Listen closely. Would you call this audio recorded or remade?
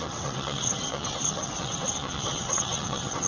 remade